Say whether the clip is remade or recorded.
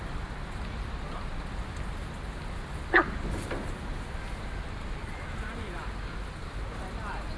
recorded